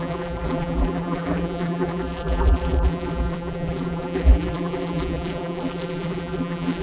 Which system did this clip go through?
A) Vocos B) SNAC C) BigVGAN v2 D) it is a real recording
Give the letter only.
C